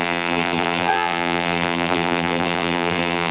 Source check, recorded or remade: remade